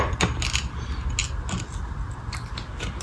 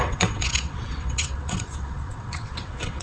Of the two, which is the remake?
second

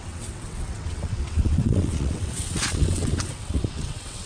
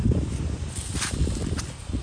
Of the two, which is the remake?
first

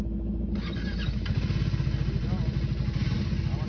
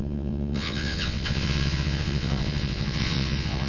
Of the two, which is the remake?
second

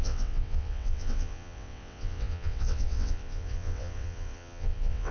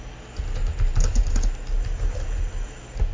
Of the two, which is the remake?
first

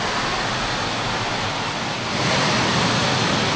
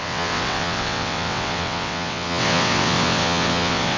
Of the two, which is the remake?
second